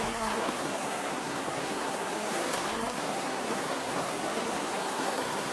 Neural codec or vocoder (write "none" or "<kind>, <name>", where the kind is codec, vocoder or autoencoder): codec, SNAC